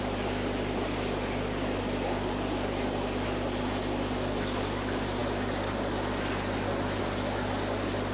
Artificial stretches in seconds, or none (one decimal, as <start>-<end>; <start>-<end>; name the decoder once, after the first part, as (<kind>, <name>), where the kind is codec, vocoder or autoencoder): none